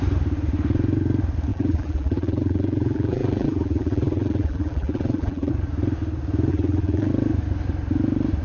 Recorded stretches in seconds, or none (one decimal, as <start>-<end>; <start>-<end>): 0.0-1.5; 5.5-6.5; 7.1-8.4